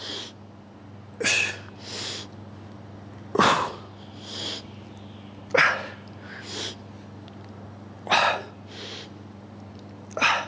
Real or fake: real